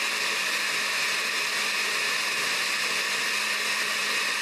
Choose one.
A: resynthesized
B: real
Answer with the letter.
B